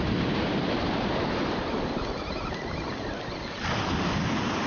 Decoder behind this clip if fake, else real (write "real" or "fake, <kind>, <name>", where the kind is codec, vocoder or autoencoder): real